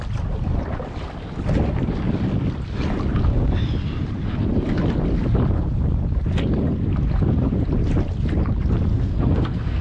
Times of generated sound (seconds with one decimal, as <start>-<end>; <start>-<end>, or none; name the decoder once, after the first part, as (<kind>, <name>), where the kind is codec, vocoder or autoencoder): 8.9-9.8 (codec, SNAC)